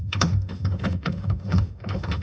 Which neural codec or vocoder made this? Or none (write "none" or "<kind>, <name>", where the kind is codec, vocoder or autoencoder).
autoencoder, DAC-VAE